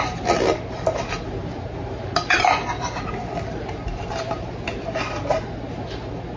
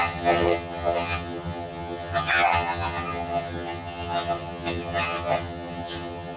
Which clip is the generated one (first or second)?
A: second